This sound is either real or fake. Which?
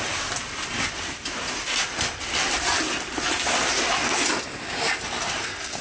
real